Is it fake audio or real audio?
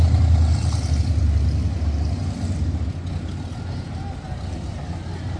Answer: real